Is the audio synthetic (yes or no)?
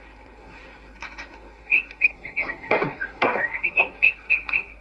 yes